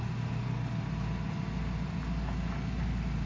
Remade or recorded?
recorded